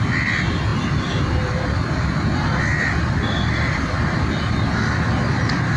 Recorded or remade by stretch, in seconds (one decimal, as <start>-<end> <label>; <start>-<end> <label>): 0.0-5.8 recorded